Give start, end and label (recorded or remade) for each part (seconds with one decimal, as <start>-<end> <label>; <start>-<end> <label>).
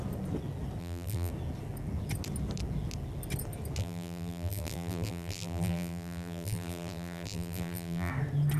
0.0-0.8 recorded; 0.8-1.3 remade; 1.3-3.8 recorded; 3.8-8.1 remade; 8.1-8.6 recorded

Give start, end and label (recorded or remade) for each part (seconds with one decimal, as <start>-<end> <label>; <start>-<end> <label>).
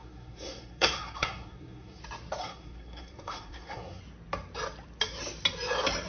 0.0-2.0 remade; 2.0-2.4 recorded; 2.4-4.0 remade; 4.0-6.1 recorded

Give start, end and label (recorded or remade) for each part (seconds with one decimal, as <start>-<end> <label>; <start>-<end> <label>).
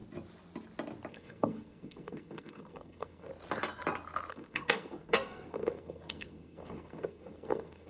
0.0-1.1 recorded; 1.1-3.3 remade; 3.3-4.3 recorded; 4.3-7.9 remade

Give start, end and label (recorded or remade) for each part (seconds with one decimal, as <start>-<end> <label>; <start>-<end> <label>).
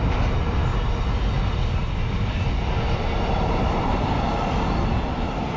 0.0-5.6 recorded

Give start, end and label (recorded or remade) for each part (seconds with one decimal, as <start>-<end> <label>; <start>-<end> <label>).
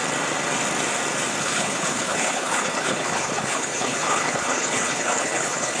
0.0-1.4 recorded; 1.4-5.8 remade